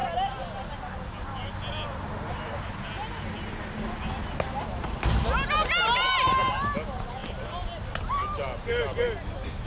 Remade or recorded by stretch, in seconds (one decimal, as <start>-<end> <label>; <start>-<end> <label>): 0.0-9.7 recorded